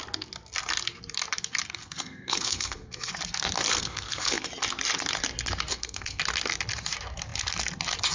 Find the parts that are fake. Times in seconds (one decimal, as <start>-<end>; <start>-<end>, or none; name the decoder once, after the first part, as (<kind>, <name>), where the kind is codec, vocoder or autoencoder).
1.8-3.1 (codec, SNAC); 3.7-4.5; 5.7-6.2

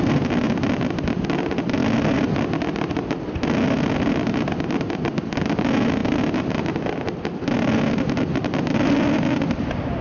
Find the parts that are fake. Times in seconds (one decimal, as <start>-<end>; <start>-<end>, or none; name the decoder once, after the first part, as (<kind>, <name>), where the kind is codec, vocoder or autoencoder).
none

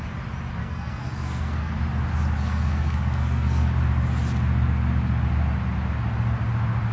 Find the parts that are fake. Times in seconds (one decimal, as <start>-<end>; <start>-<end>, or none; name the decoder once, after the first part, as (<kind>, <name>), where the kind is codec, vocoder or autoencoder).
0.6-1.7 (codec, SNAC); 2.4-3.7